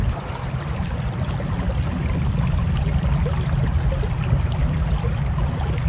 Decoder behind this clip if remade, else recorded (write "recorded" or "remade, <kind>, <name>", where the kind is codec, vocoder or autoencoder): recorded